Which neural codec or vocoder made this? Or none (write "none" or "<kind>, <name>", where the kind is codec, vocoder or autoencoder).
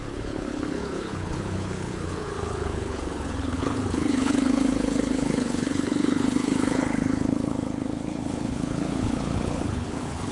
codec, HILCodec